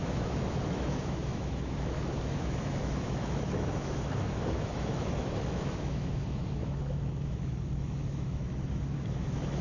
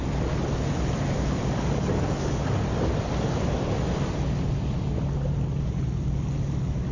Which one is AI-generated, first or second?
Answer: first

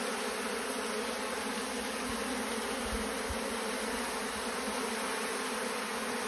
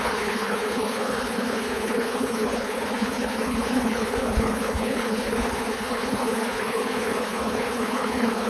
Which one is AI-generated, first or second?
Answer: second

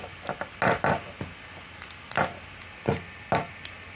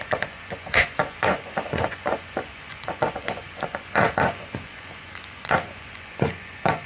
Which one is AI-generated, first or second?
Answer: second